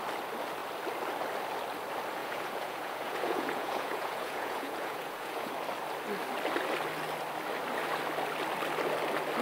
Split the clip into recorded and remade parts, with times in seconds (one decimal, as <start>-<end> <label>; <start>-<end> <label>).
0.0-2.2 recorded; 2.2-5.5 remade; 5.5-9.4 recorded